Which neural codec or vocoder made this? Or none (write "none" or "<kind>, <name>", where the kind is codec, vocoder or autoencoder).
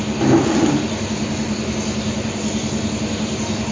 none